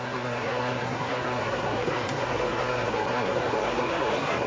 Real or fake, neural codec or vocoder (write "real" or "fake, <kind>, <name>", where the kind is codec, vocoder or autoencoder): fake, codec, SNAC